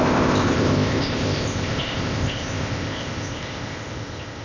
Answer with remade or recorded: remade